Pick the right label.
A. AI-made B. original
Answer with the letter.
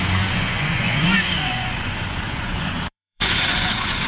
A